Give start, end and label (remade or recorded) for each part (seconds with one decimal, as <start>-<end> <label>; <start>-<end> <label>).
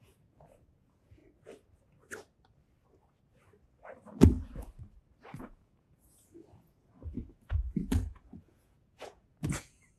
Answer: 0.0-1.2 remade; 1.2-5.4 recorded; 5.4-10.0 remade